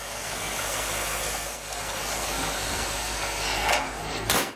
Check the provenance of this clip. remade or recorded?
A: remade